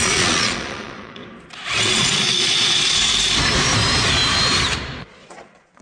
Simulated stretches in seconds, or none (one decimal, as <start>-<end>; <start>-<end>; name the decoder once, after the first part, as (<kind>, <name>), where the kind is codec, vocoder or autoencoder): 0.0-1.2 (vocoder, Vocos); 1.8-3.1; 5.0-5.8